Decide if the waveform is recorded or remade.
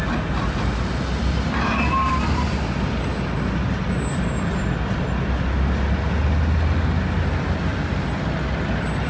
recorded